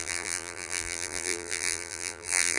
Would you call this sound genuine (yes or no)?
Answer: no